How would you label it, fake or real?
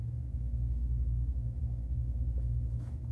fake